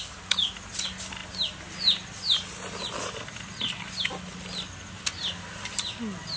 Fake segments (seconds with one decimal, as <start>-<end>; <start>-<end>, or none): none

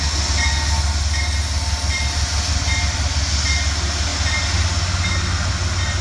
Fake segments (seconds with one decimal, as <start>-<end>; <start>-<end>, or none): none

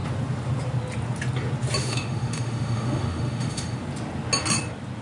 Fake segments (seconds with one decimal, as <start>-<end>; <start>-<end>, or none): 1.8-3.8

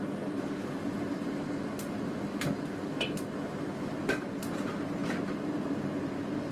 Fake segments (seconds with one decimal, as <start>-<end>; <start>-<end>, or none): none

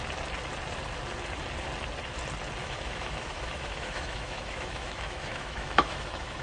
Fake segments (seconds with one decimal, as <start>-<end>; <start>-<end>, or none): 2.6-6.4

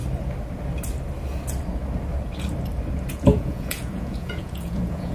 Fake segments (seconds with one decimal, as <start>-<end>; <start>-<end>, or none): 3.1-5.1